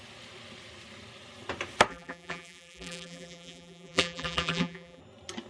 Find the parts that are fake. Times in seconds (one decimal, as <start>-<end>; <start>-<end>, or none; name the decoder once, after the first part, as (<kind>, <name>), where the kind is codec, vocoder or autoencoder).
1.9-5.0 (vocoder, BigVGAN v2)